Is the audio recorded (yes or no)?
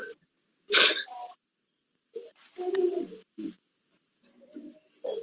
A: yes